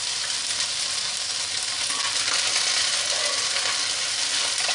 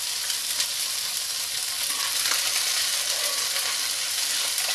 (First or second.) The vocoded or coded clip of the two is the second